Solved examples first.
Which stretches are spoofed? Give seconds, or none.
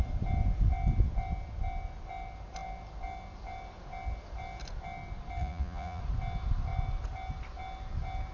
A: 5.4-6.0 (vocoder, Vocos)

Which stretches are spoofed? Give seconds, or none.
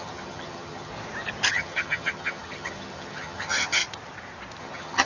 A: 0.0-0.9 (vocoder, HiFi-GAN); 1.5-3.8; 4.6-5.1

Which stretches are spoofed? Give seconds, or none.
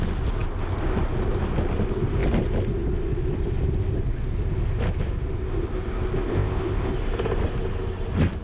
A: 6.3-6.9 (codec, ZipCodec)